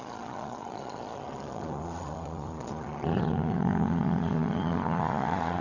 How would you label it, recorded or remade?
remade